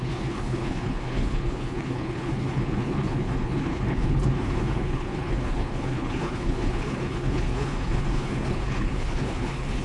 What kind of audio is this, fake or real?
fake